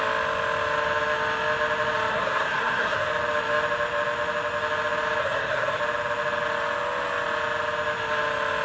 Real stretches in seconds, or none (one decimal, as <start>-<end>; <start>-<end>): 0.0-2.1; 3.1-5.2; 5.8-8.6